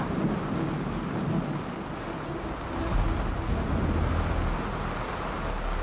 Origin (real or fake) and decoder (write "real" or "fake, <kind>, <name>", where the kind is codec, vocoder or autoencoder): real